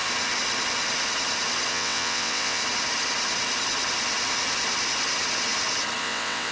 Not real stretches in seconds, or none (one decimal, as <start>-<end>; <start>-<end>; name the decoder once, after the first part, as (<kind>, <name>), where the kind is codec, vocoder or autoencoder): 1.7-2.6 (vocoder, WaveNeXt); 6.0-6.5